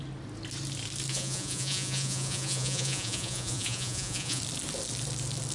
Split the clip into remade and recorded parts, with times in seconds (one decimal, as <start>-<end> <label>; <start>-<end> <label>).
0.0-1.1 recorded; 1.1-4.4 remade; 4.4-5.5 recorded